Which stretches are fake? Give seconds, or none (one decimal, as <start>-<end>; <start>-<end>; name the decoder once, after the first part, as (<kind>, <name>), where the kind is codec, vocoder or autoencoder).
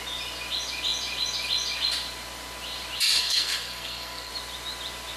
3.2-4.3 (codec, SNAC)